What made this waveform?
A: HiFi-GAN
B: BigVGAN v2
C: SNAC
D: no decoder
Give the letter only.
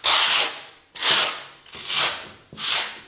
D